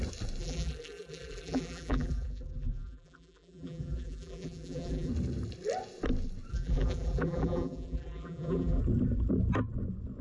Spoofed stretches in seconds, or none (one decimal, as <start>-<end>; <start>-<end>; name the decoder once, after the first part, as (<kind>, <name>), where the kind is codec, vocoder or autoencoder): 0.4-5.1 (vocoder, BigVGAN v2); 6.5-8.8